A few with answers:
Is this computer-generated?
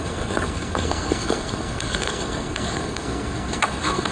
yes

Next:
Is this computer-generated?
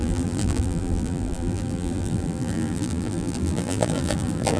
yes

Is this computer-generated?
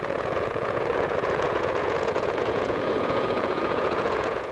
yes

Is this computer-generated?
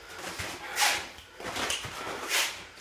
no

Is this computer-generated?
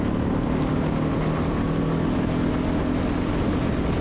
no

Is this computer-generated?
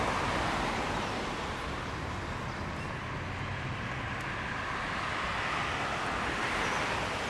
no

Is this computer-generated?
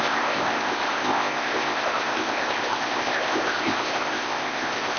yes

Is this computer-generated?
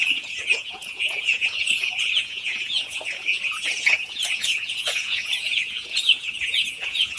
yes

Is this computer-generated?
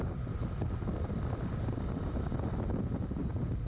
no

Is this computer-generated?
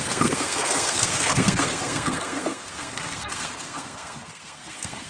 yes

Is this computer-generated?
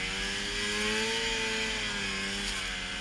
no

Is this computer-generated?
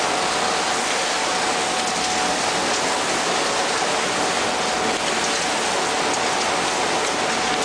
no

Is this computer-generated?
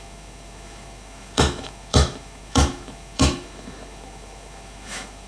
yes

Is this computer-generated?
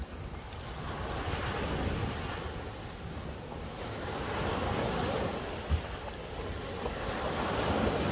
no